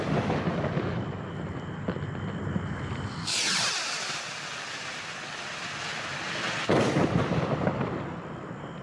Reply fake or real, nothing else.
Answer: fake